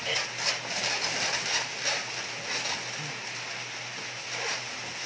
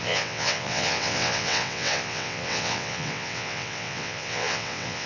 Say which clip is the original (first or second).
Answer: first